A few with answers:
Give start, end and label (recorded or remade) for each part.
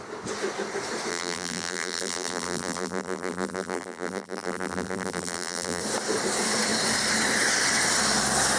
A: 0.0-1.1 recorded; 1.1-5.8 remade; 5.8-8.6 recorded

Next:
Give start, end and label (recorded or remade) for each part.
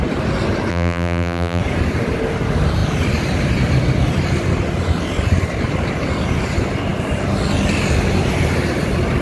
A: 0.0-0.7 recorded; 0.7-1.6 remade; 1.6-9.2 recorded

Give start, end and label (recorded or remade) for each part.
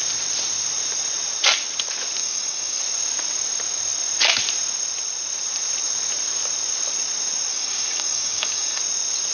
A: 0.0-2.2 recorded; 2.2-2.8 remade; 2.8-7.5 recorded; 7.5-8.8 remade; 8.8-9.3 recorded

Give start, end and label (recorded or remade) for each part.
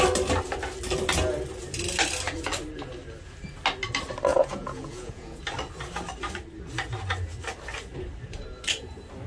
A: 0.0-4.3 recorded; 4.3-5.4 remade; 5.4-9.3 recorded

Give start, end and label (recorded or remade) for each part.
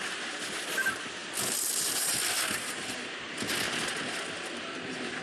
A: 0.0-5.2 recorded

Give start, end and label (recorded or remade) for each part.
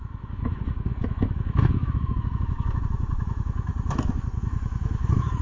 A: 0.0-3.7 remade; 3.7-4.2 recorded; 4.2-5.4 remade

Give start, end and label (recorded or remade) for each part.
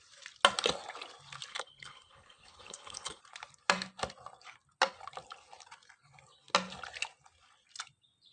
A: 0.0-1.5 recorded; 1.5-3.2 remade; 3.2-8.3 recorded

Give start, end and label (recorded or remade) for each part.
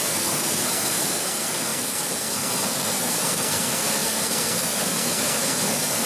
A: 0.0-6.1 remade